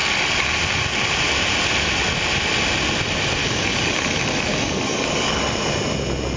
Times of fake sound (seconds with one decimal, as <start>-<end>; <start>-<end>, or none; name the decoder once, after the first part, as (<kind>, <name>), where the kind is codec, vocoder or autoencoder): 3.4-5.4 (codec, DAC)